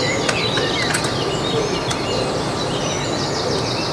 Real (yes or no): yes